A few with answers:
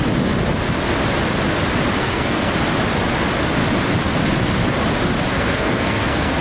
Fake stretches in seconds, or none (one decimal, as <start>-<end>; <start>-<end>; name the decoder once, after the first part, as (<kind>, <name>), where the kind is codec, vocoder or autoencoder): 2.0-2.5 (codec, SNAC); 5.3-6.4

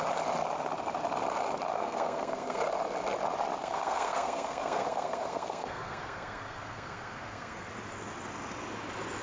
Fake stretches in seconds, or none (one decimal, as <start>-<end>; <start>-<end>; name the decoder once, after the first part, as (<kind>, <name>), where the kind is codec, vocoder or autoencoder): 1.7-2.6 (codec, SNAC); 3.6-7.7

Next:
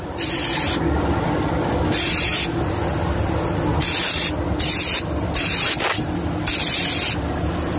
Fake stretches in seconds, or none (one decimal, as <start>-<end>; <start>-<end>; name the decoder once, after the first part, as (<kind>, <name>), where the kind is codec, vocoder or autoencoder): none

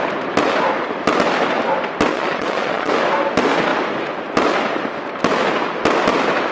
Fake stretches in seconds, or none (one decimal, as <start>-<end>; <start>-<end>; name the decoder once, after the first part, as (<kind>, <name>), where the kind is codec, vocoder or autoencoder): 2.1-2.9 (vocoder, Vocos)

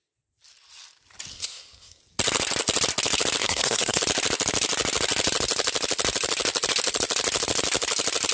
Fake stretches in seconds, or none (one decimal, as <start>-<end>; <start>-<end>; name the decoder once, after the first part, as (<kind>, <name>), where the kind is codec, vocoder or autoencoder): 1.3-2.0 (codec, SNAC); 3.4-4.0

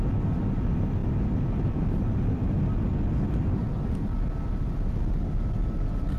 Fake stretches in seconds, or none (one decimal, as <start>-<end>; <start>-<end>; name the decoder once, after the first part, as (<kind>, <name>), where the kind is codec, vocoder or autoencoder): none

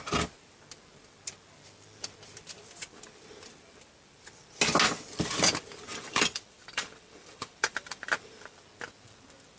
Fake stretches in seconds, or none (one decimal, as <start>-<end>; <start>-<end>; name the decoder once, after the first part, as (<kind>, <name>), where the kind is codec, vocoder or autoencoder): 5.9-8.6 (vocoder, BigVGAN v2)